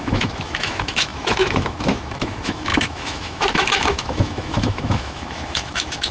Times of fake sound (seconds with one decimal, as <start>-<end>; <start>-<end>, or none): 0.0-6.1